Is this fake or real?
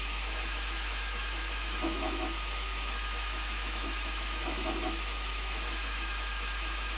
fake